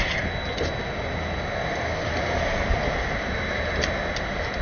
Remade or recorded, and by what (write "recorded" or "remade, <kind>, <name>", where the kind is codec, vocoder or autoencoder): recorded